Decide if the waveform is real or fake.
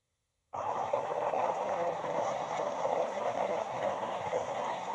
fake